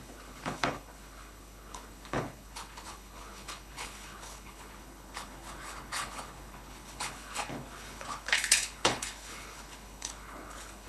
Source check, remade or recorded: remade